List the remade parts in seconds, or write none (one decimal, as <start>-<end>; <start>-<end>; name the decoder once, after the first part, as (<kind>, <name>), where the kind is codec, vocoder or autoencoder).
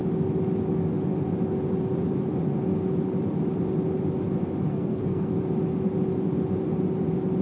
4.7-5.4 (codec, SNAC)